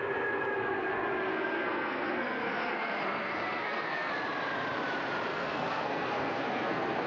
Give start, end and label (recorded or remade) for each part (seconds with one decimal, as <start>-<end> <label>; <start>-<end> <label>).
0.0-1.3 recorded; 1.3-4.1 remade; 4.1-5.3 recorded; 5.3-7.1 remade